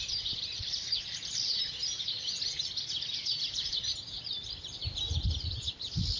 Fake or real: fake